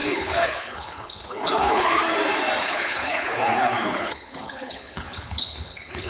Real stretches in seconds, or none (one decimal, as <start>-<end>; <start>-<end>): 2.0-2.6